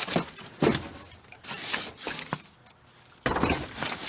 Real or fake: real